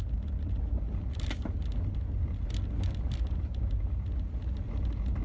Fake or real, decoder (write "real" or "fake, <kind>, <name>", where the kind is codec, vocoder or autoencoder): real